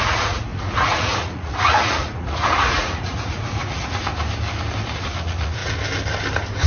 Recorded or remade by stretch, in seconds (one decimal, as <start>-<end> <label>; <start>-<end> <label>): 0.0-4.1 remade; 4.1-4.9 recorded; 4.9-5.6 remade; 5.6-6.7 recorded